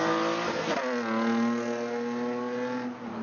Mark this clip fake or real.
real